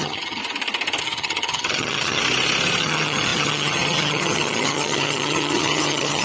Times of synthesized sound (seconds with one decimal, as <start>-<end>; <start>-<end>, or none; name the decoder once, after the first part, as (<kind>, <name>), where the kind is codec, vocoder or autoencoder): 0.0-0.4 (vocoder, HiFi-GAN); 1.0-2.2; 2.8-6.2